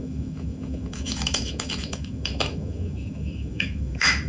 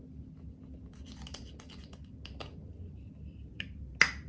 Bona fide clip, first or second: second